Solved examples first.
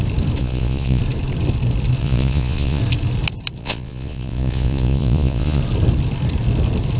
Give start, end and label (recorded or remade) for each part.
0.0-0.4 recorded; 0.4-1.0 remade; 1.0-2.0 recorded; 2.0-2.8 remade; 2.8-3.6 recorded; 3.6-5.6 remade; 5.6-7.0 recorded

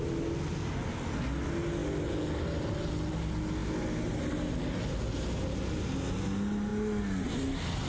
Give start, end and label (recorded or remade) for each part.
0.0-7.9 recorded

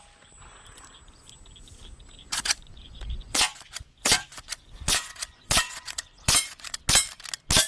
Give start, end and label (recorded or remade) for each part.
0.0-2.2 recorded; 2.2-6.8 remade; 6.8-7.7 recorded